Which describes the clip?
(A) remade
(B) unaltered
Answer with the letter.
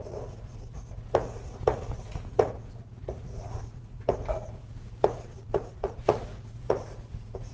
A